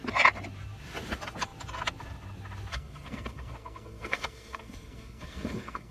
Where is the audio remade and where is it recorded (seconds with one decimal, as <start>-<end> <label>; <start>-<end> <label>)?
0.0-2.7 recorded; 2.7-5.9 remade